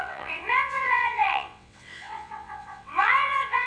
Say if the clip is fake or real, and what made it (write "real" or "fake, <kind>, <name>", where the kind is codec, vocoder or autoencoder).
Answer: fake, vocoder, WaveNeXt